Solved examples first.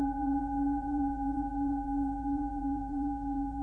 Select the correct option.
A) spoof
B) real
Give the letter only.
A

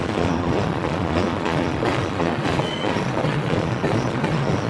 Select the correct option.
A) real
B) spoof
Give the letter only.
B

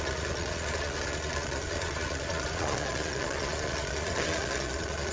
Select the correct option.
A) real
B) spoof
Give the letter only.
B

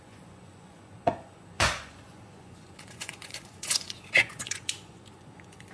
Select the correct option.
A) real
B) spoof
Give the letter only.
B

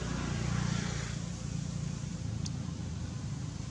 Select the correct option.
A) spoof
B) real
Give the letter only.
B